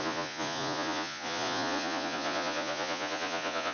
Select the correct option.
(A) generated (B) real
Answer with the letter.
A